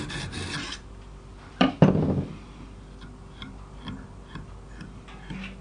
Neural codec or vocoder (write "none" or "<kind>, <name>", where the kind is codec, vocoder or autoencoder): vocoder, BigVGAN v2